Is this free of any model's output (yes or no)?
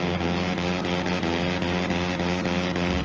yes